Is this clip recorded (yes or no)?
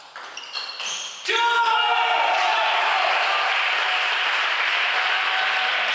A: yes